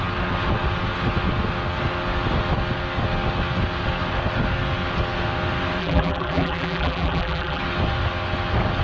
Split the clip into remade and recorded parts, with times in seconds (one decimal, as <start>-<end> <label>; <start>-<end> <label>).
0.0-5.8 recorded; 5.8-7.6 remade; 7.6-8.8 recorded